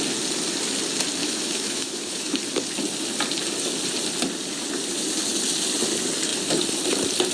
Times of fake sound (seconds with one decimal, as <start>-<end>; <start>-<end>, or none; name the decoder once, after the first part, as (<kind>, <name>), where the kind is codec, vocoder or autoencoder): 1.2-2.4 (autoencoder, DAC-VAE)